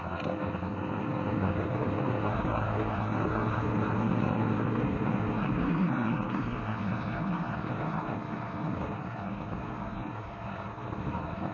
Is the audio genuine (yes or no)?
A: no